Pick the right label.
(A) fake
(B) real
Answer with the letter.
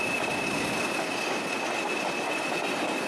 B